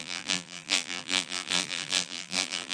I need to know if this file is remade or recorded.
remade